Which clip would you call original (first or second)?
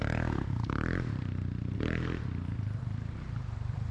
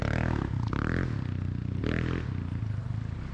second